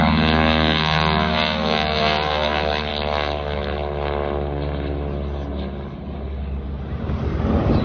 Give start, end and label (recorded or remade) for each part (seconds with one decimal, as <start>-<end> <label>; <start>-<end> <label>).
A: 0.0-2.9 remade; 2.9-7.8 recorded